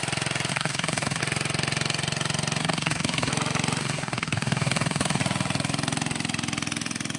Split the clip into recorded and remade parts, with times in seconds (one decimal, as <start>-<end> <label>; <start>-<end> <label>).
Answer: 0.0-0.5 recorded; 0.5-1.2 remade; 1.2-2.6 recorded; 2.6-3.3 remade; 3.3-3.8 recorded; 3.8-5.2 remade; 5.2-7.2 recorded